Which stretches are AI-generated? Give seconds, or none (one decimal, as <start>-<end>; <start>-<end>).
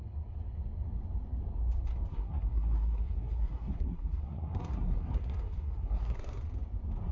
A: 2.1-6.4